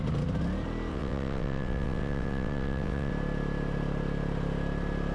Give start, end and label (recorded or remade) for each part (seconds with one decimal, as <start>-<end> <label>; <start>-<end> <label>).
0.0-0.9 recorded; 0.9-3.1 remade; 3.1-5.1 recorded